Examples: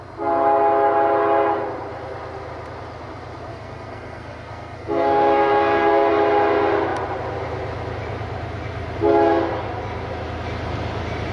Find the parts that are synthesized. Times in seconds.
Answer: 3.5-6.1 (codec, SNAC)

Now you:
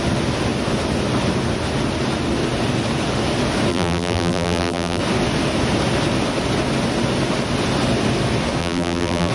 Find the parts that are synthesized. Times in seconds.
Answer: 3.7-5.0 (vocoder, BigVGAN v2); 8.6-9.3

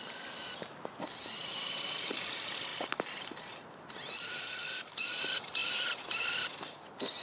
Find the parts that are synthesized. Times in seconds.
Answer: none

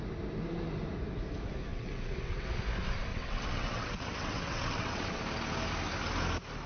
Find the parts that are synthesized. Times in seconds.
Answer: 1.7-2.5 (vocoder, WaveNeXt); 3.1-5.2

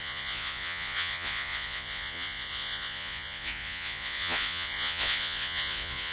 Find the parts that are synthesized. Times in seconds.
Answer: 0.0-6.1 (vocoder, Vocos)

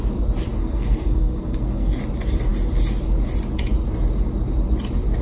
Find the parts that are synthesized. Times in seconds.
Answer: 0.6-2.0 (codec, SNAC)

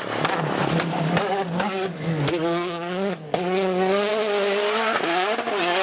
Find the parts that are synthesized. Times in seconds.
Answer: 0.6-4.1 (codec, DAC)

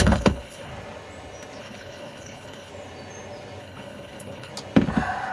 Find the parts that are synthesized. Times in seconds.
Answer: 0.0-0.7 (codec, HILCodec); 1.6-2.7; 3.6-4.5